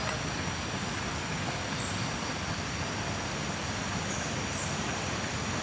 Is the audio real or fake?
real